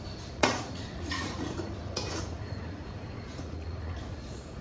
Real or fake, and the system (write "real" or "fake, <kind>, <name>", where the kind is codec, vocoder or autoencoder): fake, vocoder, Vocos